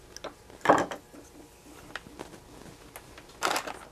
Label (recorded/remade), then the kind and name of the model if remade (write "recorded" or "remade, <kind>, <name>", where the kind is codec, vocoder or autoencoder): recorded